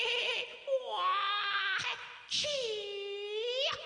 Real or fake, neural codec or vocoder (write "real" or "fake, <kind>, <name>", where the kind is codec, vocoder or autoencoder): real